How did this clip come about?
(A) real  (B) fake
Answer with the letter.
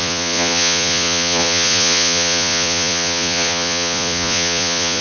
B